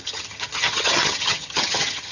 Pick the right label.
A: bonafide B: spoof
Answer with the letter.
B